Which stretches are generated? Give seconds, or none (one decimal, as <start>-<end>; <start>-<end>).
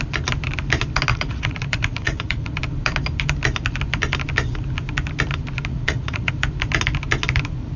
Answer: 1.1-2.6; 5.7-6.3